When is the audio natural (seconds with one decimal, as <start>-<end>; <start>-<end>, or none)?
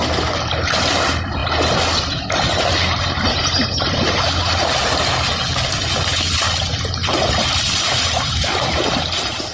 0.0-9.5